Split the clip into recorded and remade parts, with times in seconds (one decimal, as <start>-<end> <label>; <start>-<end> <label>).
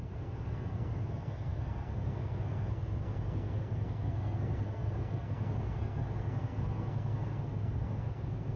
0.0-8.6 remade